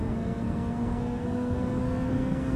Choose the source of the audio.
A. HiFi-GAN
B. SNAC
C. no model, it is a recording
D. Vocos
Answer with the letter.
B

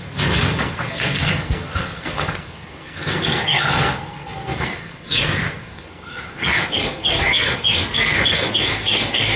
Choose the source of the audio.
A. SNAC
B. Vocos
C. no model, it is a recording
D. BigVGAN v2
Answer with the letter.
A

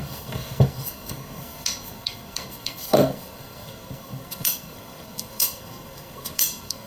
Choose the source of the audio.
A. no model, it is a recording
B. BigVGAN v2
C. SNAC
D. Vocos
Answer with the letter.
C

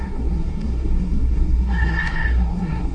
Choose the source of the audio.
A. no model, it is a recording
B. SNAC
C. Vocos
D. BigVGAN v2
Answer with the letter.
B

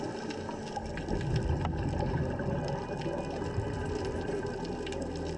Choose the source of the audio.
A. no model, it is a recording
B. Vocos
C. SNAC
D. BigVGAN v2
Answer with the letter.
A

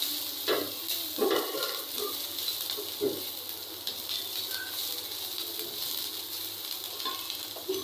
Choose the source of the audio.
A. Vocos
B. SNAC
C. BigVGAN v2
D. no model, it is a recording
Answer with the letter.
D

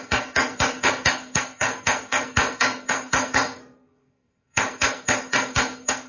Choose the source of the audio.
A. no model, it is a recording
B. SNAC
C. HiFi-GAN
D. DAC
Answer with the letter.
B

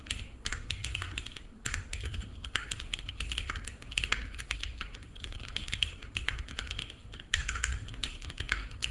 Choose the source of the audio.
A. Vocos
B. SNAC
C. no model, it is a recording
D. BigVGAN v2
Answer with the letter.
B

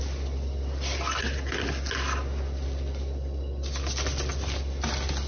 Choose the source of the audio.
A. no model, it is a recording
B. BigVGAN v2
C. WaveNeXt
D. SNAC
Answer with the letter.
A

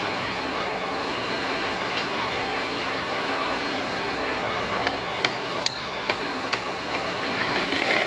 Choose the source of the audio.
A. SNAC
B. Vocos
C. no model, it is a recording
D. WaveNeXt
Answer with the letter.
A